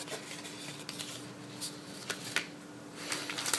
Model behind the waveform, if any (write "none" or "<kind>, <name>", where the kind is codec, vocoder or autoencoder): none